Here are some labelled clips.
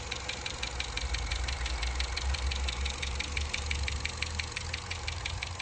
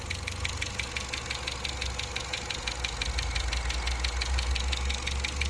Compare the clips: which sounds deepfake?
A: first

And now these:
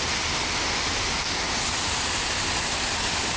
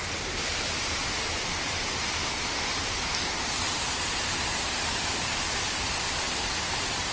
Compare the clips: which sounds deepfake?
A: second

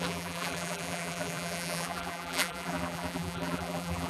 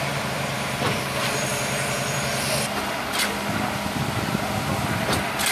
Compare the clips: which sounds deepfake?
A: first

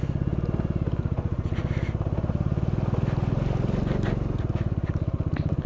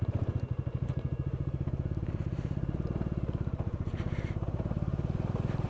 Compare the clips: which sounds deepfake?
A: second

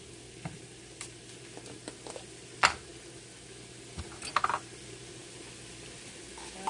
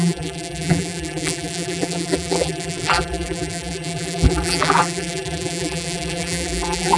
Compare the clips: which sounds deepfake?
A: second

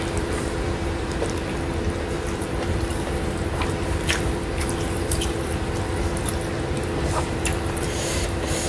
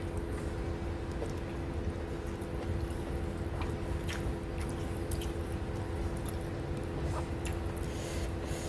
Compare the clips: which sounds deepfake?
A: first